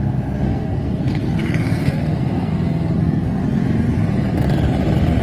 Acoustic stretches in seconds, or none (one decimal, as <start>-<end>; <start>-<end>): 2.5-3.0; 3.4-5.2